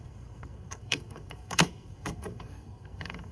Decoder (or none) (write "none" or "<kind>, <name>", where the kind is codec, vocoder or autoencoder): codec, SNAC